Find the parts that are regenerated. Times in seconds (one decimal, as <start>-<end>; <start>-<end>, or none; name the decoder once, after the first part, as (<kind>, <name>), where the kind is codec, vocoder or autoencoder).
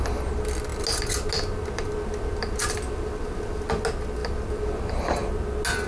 none